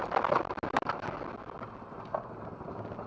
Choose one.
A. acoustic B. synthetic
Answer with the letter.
A